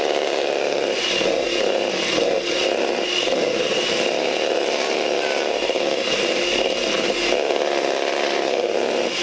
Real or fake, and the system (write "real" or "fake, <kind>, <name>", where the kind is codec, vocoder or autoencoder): real